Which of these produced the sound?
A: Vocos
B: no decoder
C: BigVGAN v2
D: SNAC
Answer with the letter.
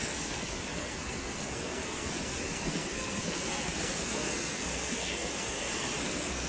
D